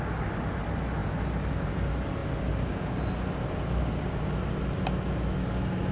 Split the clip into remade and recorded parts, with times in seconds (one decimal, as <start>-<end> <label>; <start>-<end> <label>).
0.0-5.9 recorded